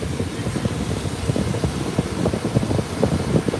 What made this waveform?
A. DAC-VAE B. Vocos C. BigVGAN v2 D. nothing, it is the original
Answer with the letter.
D